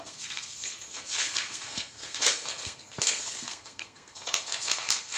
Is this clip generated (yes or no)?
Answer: yes